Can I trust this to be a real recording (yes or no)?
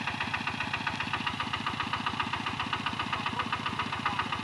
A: yes